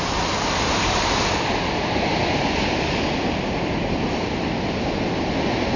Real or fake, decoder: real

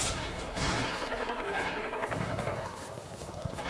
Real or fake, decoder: fake, codec, SNAC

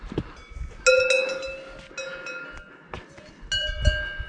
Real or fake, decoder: real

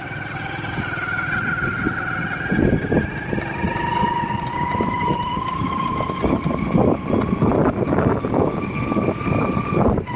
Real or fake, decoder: real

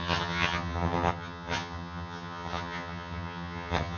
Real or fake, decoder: fake, vocoder, HiFi-GAN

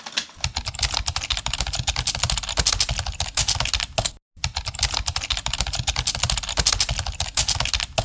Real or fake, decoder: real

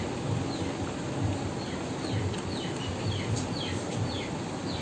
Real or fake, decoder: real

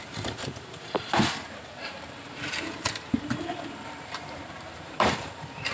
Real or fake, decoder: fake, vocoder, BigVGAN v2